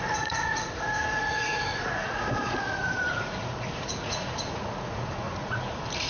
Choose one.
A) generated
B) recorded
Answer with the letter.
A